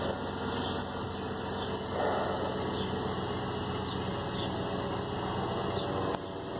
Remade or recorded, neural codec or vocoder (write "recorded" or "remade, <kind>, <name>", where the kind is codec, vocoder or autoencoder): recorded